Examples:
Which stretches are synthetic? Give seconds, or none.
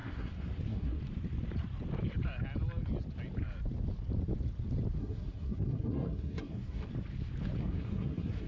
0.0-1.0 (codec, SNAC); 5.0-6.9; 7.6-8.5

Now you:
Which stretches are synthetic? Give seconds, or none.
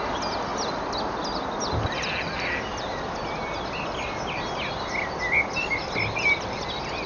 none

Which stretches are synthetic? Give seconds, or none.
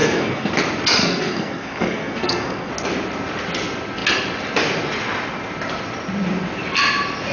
0.0-0.5 (codec, SNAC); 1.0-2.7